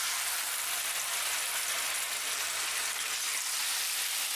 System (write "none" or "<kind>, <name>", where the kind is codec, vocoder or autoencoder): none